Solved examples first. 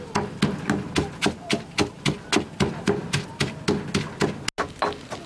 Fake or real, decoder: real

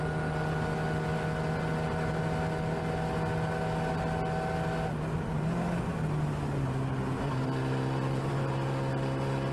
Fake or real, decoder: real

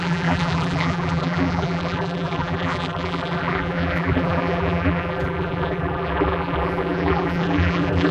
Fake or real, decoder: fake, vocoder, BigVGAN v2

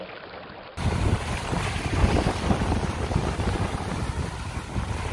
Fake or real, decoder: real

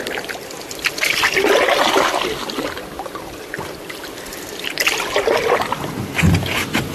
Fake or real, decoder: real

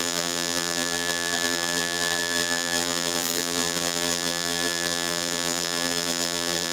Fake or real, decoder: fake, vocoder, BigVGAN v2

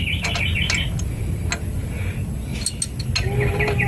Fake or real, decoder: real